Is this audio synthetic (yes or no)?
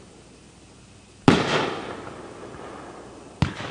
no